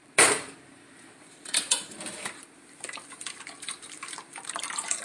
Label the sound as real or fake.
fake